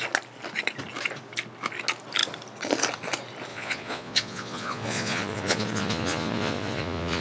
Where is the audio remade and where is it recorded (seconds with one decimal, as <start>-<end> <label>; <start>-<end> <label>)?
0.0-3.5 recorded; 3.5-7.2 remade